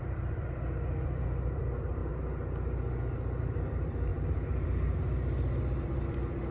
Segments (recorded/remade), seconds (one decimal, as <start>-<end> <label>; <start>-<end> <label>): 0.0-2.0 remade; 2.0-3.4 recorded; 3.4-6.5 remade